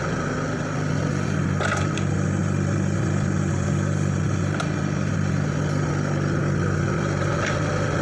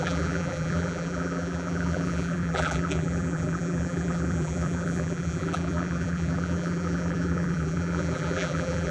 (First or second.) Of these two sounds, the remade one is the second